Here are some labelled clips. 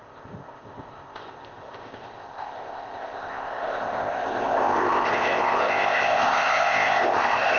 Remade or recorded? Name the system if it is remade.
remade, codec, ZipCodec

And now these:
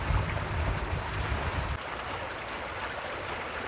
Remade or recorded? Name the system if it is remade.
recorded